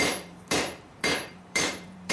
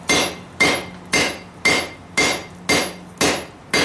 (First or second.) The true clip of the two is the second